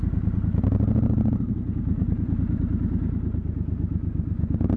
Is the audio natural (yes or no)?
no